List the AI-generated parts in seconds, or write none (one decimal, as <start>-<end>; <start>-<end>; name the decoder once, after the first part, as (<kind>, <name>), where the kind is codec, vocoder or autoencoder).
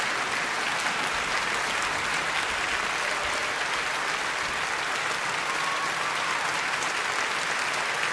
none